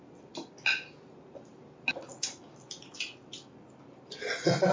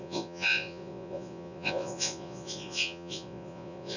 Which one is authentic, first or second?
first